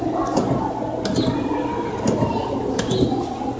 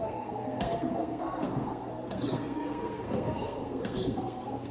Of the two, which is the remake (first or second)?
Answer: second